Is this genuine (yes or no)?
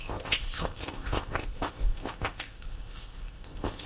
no